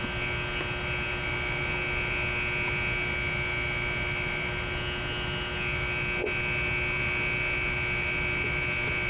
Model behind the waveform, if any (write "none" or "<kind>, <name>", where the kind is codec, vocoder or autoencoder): none